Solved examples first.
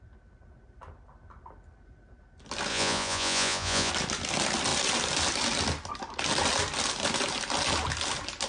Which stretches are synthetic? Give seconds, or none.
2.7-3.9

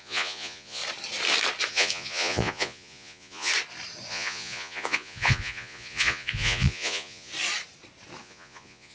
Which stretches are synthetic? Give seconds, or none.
0.0-0.8; 1.7-3.5; 4.1-7.3; 8.2-8.9